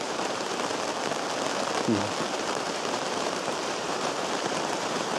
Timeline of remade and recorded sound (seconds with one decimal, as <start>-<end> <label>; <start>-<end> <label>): 0.0-0.7 remade; 0.7-2.3 recorded; 2.3-5.2 remade